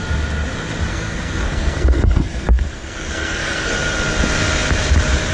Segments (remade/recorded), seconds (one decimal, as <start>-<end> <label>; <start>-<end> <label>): 0.0-0.9 recorded; 0.9-3.7 remade; 3.7-5.3 recorded